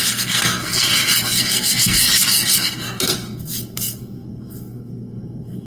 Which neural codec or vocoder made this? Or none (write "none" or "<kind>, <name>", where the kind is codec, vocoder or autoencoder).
codec, SNAC